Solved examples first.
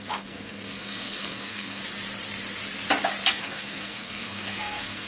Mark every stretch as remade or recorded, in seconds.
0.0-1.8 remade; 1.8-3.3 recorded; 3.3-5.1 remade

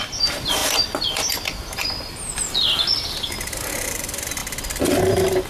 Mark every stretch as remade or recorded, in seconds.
0.0-4.4 remade; 4.4-5.0 recorded; 5.0-5.5 remade

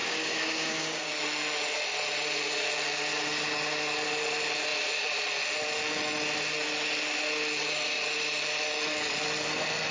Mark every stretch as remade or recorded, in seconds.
0.0-1.2 remade; 1.2-9.9 recorded

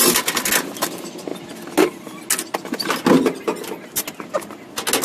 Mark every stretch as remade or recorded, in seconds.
0.0-5.0 recorded

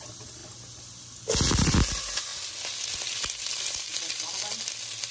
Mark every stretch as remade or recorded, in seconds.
0.0-5.1 recorded

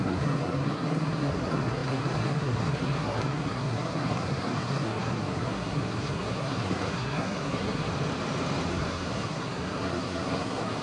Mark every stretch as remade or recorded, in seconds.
0.0-7.9 remade; 7.9-8.7 recorded; 8.7-10.8 remade

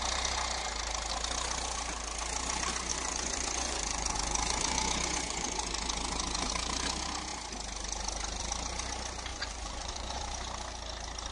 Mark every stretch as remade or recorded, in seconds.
0.0-2.9 recorded; 2.9-6.5 remade; 6.5-9.3 recorded; 9.3-10.2 remade; 10.2-11.3 recorded